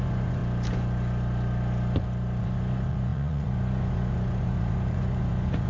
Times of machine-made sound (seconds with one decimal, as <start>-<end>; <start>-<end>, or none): 0.0-0.4; 2.4-5.7